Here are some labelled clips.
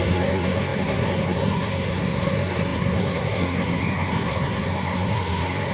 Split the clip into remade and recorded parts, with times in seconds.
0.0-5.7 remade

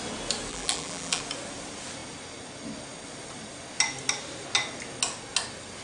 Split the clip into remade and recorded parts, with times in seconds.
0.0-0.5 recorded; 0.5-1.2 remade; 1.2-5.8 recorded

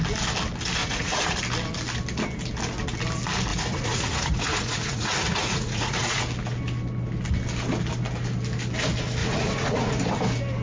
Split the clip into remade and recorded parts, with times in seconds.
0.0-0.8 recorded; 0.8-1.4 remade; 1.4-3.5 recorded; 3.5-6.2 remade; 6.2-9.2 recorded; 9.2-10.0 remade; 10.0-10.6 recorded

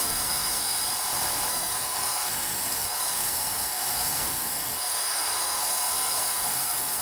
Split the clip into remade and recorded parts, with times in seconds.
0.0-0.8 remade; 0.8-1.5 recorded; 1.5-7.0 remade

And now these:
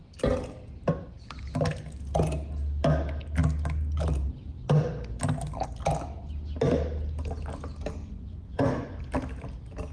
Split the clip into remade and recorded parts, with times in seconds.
0.0-8.0 recorded; 8.0-9.0 remade; 9.0-9.9 recorded

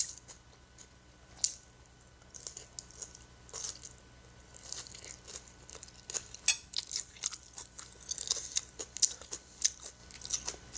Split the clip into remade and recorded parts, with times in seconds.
0.0-10.8 recorded

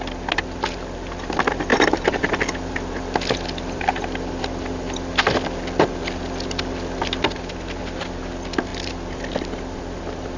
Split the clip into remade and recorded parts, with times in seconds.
0.0-1.7 recorded; 1.7-2.4 remade; 2.4-10.4 recorded

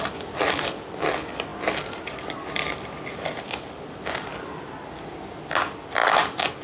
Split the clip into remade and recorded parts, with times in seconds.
0.0-6.6 recorded